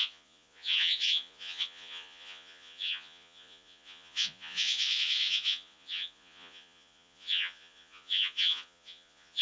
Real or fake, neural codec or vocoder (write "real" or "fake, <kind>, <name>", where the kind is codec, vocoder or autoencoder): fake, vocoder, Vocos